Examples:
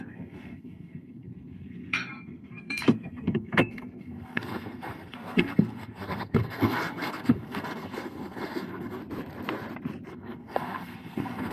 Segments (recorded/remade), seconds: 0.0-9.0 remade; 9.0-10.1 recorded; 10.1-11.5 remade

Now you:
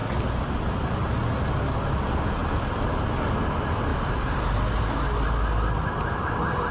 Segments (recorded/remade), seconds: 0.0-0.6 remade; 0.6-2.4 recorded; 2.4-3.1 remade; 3.1-3.9 recorded; 3.9-4.8 remade; 4.8-6.7 recorded

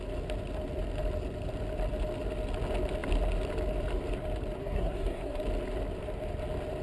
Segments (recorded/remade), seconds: 0.0-4.6 recorded; 4.6-5.4 remade; 5.4-6.8 recorded